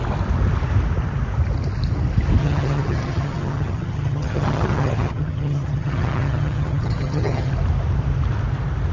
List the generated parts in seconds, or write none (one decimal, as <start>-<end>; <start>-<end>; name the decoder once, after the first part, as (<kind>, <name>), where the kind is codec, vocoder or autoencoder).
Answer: 2.4-7.5 (vocoder, HiFi-GAN)